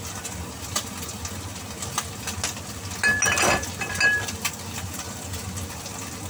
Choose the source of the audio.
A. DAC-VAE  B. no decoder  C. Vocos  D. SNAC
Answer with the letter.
B